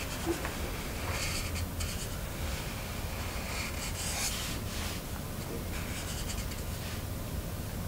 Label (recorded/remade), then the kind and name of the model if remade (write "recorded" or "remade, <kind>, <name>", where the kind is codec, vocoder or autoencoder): recorded